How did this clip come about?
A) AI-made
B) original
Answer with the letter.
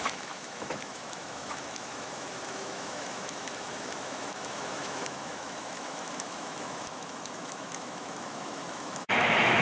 A